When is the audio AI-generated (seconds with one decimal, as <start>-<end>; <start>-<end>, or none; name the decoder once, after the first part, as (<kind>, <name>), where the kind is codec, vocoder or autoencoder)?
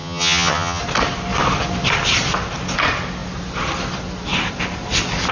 0.0-0.8 (vocoder, HiFi-GAN)